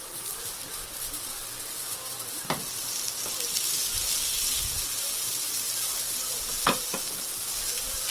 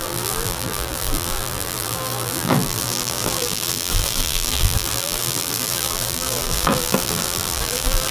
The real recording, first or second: first